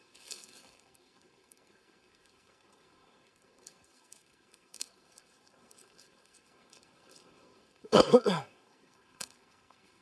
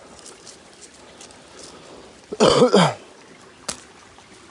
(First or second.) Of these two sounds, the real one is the second